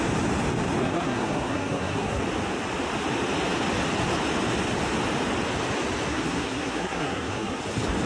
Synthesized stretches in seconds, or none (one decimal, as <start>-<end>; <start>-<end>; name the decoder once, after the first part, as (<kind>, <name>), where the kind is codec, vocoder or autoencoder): 0.8-2.2 (codec, SNAC); 6.1-7.6